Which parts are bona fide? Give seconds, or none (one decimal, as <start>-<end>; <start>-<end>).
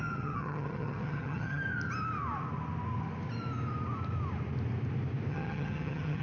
1.6-5.3